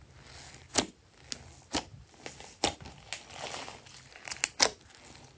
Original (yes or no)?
yes